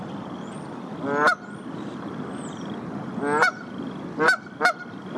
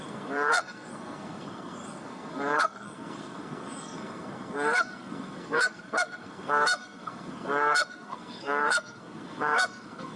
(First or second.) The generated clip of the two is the second